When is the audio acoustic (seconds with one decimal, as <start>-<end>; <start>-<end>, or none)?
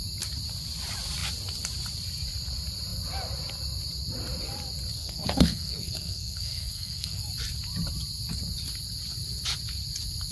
0.0-5.0; 7.3-10.3